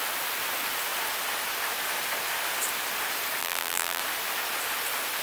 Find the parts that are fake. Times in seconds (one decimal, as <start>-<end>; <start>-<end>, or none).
3.4-4.0

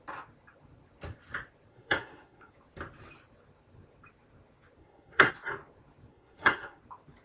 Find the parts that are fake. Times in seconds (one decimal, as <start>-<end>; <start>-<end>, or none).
1.7-2.5; 4.8-5.3; 6.1-6.8

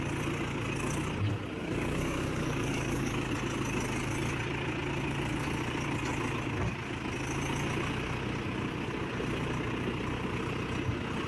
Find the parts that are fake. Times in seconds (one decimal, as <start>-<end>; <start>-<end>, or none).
1.6-3.3

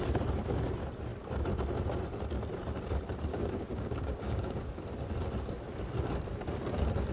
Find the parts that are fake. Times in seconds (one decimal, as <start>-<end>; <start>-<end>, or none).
3.3-4.7